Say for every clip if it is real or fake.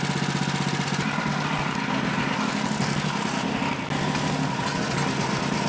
real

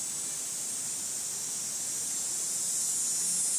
real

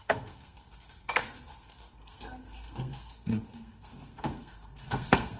fake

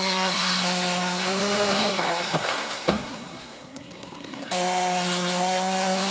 fake